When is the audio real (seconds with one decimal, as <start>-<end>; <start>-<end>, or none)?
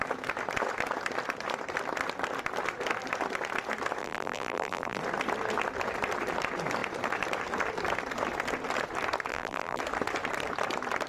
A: 0.0-4.0; 5.0-9.3; 9.8-11.1